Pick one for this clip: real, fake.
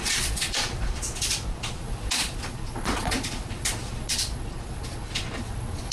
fake